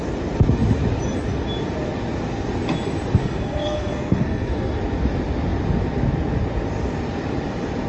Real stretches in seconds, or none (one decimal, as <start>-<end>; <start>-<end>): 0.0-3.2; 4.8-7.9